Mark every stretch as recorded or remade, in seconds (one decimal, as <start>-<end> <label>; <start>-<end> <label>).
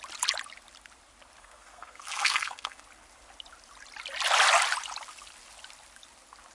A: 0.0-1.4 recorded; 1.4-2.8 remade; 2.8-6.5 recorded